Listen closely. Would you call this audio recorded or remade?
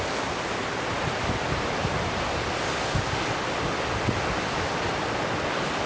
recorded